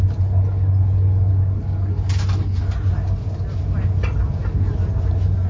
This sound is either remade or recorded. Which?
recorded